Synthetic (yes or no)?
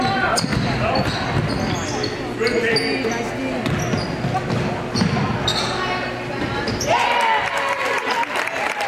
no